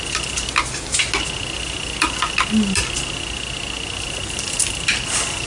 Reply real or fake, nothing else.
real